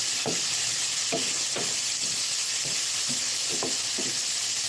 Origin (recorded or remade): recorded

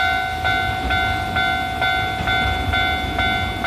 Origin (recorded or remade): recorded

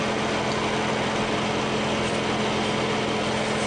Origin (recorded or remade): recorded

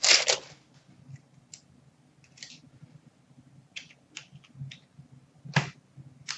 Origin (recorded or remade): recorded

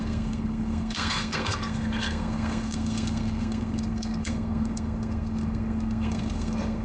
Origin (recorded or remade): remade